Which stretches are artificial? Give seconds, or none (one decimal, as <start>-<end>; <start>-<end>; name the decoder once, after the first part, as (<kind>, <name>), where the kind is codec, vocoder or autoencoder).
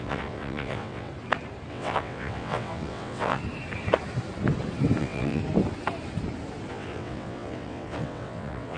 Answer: 0.0-1.1 (vocoder, WaveNeXt); 1.7-3.4; 5.0-5.4; 6.7-8.8